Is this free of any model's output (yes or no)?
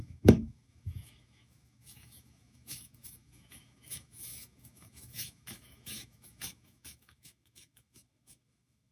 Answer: no